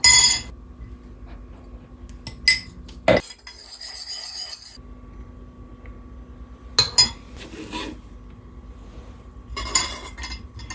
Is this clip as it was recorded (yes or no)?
yes